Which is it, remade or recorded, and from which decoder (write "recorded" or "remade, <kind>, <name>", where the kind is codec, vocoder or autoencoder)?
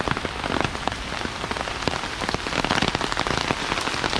recorded